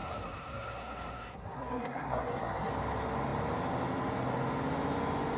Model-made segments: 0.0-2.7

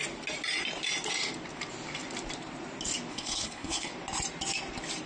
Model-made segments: 3.1-3.9

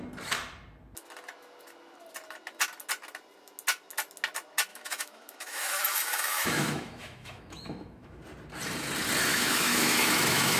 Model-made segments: 4.7-8.2; 9.3-10.6

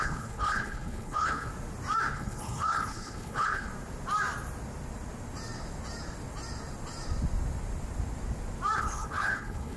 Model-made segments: 0.0-1.5; 2.1-3.7; 8.8-9.8

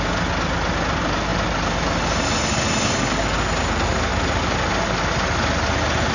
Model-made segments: none

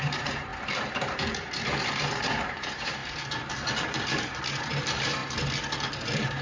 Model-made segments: 0.0-5.2; 5.9-6.4

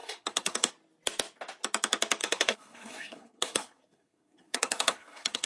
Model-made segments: 0.0-0.7; 2.2-5.5